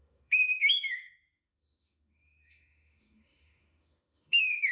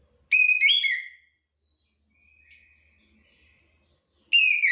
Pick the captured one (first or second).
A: second